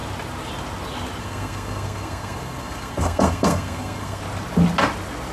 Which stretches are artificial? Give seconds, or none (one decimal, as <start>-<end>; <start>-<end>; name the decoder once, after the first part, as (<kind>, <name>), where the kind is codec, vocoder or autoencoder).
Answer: 1.2-4.2 (codec, SNAC)